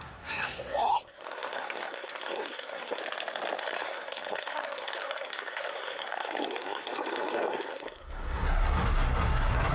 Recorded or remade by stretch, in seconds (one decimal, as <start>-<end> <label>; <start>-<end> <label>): 0.0-3.0 remade; 3.0-3.6 recorded; 3.6-9.7 remade